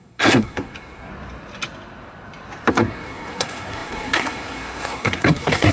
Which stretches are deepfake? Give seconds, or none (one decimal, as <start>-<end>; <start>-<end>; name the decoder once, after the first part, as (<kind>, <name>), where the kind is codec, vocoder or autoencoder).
0.0-1.1 (codec, SNAC); 2.7-5.7